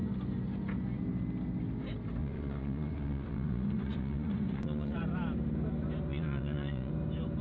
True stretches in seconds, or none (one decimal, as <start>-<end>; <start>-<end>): 0.0-2.2; 5.0-6.1; 6.9-7.4